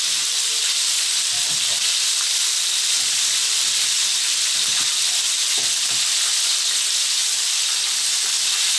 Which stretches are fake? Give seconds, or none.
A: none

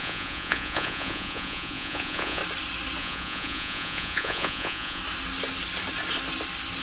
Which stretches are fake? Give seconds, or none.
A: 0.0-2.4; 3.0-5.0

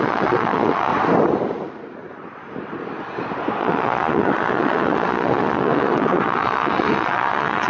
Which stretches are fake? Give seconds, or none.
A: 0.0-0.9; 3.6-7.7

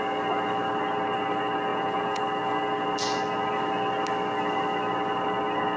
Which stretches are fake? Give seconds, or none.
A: 1.7-2.2

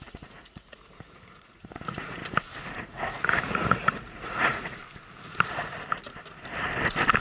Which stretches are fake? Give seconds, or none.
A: 0.0-2.2; 2.8-4.8

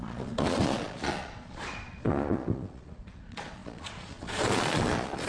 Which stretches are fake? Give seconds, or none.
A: 0.0-5.3